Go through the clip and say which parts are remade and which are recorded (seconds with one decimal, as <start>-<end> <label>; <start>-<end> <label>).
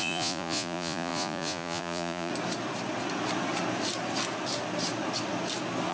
0.0-2.3 remade; 2.3-5.9 recorded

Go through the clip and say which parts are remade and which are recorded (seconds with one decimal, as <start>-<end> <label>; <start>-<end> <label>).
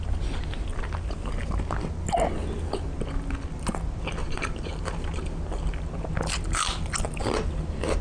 0.0-4.2 recorded; 4.2-4.8 remade; 4.8-8.0 recorded